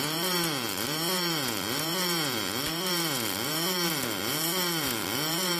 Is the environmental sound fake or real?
fake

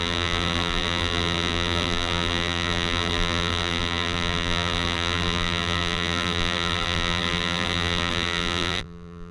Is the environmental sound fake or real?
fake